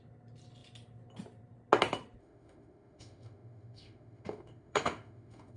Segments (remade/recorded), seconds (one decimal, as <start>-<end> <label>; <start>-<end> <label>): 0.0-2.2 recorded; 2.2-5.6 remade

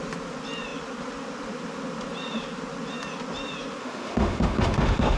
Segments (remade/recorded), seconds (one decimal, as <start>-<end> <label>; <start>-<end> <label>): 0.0-3.8 recorded; 3.8-5.2 remade

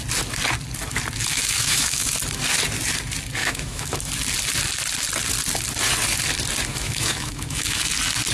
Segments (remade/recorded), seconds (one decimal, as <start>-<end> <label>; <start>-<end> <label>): 0.0-1.3 recorded; 1.3-2.1 remade; 2.1-3.4 recorded; 3.4-4.1 remade; 4.1-6.7 recorded; 6.7-7.9 remade; 7.9-8.3 recorded

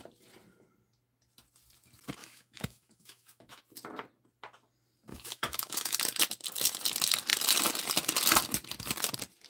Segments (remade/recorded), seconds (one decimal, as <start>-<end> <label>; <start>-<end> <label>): 0.0-2.2 recorded; 2.2-3.6 remade; 3.6-5.1 recorded; 5.1-6.0 remade; 6.0-9.5 recorded

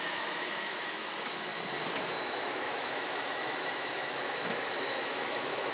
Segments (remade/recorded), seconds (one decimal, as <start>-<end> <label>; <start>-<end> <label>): 0.0-1.5 remade; 1.5-2.3 recorded; 2.3-5.7 remade

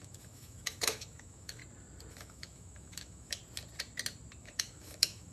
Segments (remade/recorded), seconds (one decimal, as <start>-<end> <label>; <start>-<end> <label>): 0.0-1.6 remade; 1.6-2.1 recorded; 2.1-3.4 remade; 3.4-4.4 recorded; 4.4-5.3 remade